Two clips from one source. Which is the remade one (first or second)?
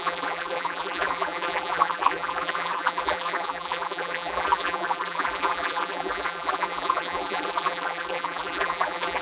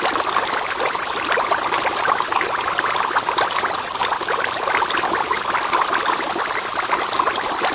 first